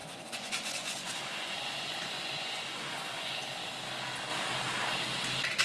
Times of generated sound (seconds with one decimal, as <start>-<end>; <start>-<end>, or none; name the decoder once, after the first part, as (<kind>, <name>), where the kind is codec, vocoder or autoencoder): 0.0-3.4 (vocoder, Vocos)